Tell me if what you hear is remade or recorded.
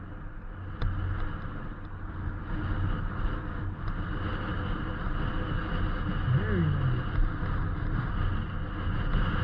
recorded